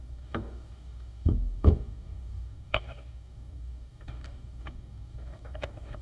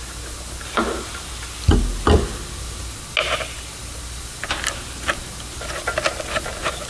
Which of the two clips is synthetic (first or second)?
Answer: first